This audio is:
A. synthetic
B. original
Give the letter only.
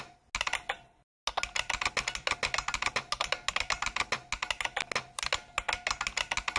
B